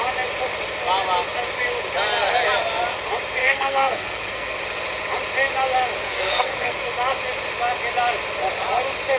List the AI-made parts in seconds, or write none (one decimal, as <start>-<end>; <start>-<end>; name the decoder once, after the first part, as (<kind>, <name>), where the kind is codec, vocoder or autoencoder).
3.4-4.6 (codec, SNAC); 6.1-6.9